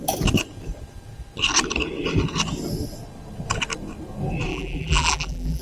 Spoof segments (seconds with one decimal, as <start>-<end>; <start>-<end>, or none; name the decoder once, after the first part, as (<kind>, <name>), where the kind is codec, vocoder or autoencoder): 4.5-5.6 (vocoder, BigVGAN v2)